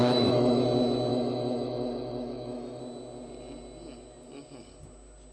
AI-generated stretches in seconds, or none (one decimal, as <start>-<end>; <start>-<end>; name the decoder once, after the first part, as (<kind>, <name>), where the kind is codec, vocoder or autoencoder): 0.0-0.6 (autoencoder, DAC-VAE); 1.1-2.8